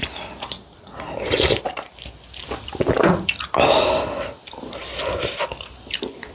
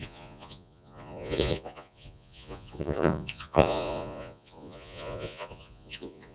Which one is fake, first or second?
second